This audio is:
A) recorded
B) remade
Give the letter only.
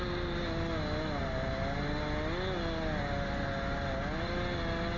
A